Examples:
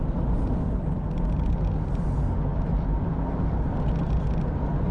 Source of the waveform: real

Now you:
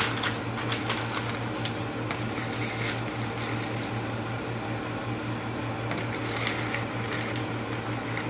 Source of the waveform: real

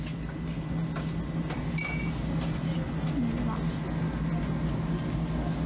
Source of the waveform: real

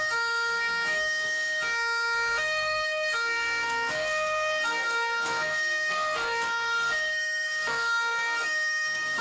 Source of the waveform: fake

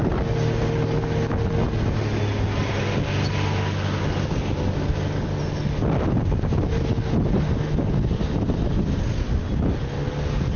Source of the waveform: real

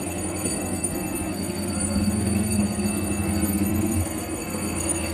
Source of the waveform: fake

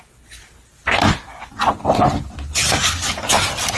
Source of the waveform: real